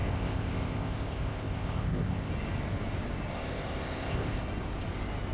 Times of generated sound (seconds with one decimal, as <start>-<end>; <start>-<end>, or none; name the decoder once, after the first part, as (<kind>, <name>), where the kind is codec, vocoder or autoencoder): 0.0-2.3 (codec, ZipCodec); 3.3-4.4